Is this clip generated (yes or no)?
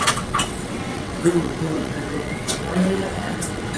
yes